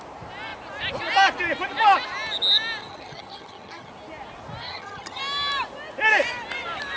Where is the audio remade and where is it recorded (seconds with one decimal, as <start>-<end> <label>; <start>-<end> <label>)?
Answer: 0.0-2.8 recorded; 2.8-3.9 remade; 3.9-4.6 recorded; 4.6-5.2 remade; 5.2-7.0 recorded